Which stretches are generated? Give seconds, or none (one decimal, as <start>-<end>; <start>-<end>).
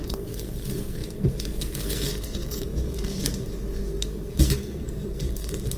0.0-5.8